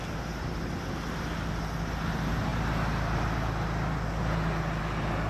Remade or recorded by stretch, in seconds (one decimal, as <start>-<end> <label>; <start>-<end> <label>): 0.0-5.3 recorded